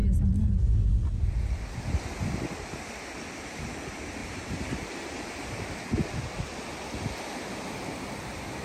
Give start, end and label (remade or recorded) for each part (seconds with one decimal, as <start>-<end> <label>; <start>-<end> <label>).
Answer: 0.0-4.2 recorded; 4.2-5.3 remade; 5.3-8.6 recorded